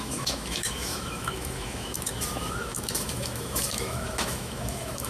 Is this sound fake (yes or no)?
yes